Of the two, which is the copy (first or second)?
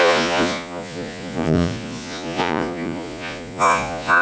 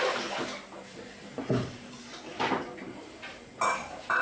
first